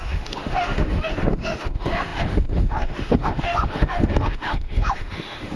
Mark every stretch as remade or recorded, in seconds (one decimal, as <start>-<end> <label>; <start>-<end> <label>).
0.0-5.6 remade